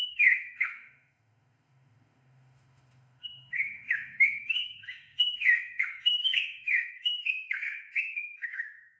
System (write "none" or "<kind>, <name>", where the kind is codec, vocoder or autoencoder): autoencoder, DAC-VAE